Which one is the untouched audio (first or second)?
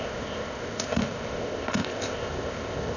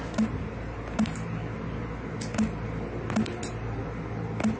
second